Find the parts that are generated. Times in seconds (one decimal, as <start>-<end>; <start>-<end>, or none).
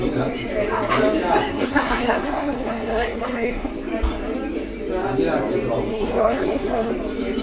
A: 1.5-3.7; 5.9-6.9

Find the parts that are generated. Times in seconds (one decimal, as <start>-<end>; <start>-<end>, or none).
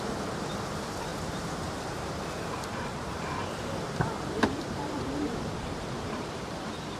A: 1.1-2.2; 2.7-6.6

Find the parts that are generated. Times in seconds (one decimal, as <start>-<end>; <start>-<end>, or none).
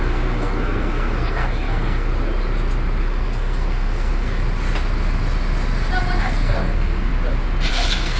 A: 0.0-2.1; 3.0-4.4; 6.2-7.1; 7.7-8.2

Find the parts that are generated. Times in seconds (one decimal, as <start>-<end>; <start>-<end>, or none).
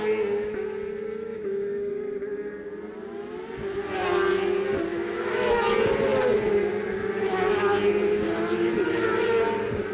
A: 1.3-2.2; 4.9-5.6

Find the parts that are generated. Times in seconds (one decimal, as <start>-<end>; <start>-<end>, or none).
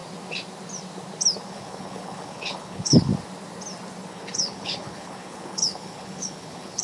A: 1.5-3.1; 4.1-6.8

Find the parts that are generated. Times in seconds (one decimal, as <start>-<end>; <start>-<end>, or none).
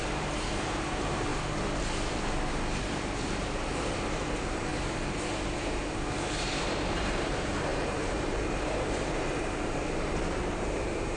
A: 0.0-1.3; 3.2-11.2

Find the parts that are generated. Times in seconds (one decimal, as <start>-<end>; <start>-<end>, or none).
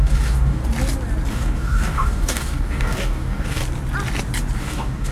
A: 0.0-0.6; 1.3-3.6; 4.6-5.1